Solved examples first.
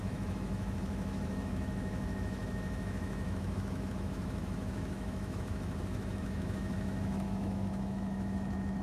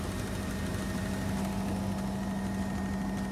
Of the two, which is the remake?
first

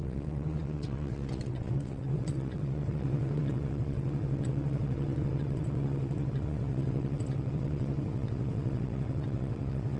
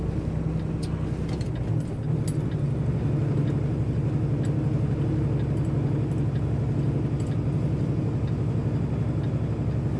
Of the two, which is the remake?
first